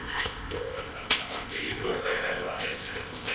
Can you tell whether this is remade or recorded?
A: remade